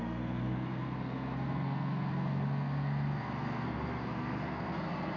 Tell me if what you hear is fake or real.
fake